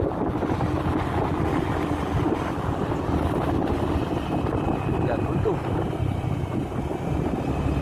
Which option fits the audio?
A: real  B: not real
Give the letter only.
A